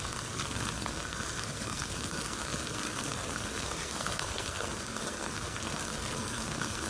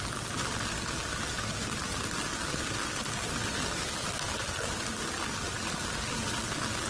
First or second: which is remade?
first